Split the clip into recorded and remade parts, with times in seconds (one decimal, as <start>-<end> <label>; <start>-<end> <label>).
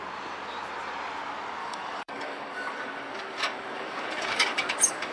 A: 0.0-1.6 recorded; 1.6-5.1 remade